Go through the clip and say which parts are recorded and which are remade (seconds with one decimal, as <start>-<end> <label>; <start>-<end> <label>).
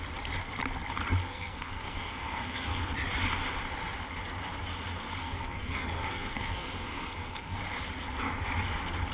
0.0-1.2 recorded; 1.2-2.8 remade; 2.8-5.2 recorded; 5.2-7.6 remade; 7.6-9.1 recorded